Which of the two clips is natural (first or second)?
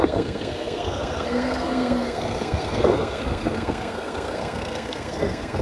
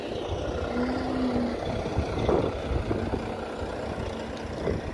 second